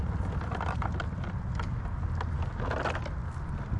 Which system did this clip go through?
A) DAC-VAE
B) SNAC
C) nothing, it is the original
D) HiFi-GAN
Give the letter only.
C